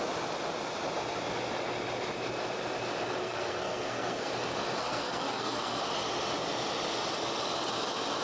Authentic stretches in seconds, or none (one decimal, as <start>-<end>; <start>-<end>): 0.0-3.2; 4.3-4.8; 5.8-8.2